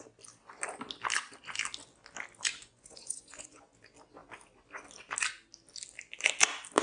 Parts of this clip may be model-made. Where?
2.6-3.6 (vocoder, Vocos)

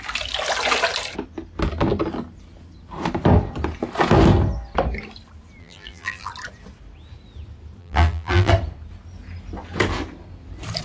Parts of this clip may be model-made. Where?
5.6-6.3 (vocoder, BigVGAN v2); 7.8-8.5

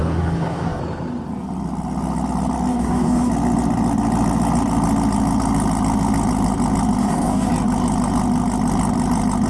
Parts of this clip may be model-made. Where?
0.0-0.8 (codec, DAC); 2.7-3.3; 7.0-7.5

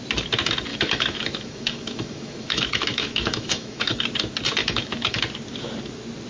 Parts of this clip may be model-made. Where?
0.7-4.0 (autoencoder, DAC-VAE); 4.6-5.2